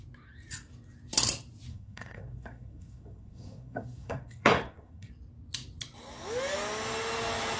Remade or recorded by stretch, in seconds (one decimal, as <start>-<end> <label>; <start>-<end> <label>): 0.0-1.7 recorded; 1.7-5.1 remade; 5.1-7.6 recorded